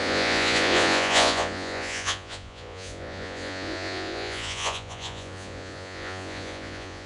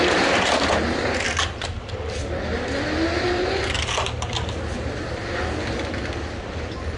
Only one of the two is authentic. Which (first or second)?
second